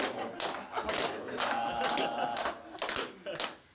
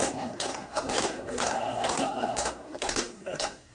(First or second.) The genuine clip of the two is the first